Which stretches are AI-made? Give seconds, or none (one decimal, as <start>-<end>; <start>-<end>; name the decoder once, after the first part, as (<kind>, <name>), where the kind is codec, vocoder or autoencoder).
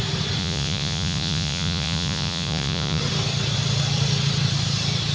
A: 0.4-3.0 (vocoder, Vocos)